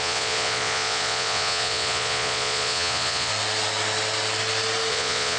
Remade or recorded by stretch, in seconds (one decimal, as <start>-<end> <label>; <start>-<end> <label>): 0.0-3.3 remade; 3.3-4.9 recorded; 4.9-5.4 remade